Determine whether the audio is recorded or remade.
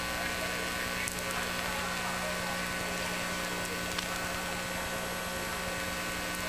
recorded